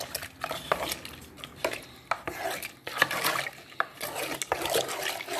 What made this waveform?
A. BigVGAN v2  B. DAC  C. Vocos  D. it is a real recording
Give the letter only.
D